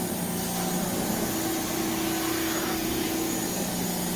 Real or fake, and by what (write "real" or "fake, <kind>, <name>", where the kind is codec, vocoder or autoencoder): real